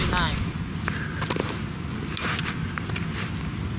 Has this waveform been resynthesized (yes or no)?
no